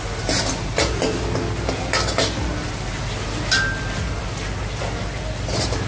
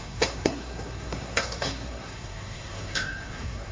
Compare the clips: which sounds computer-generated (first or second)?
second